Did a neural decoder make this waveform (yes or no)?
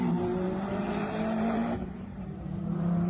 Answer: yes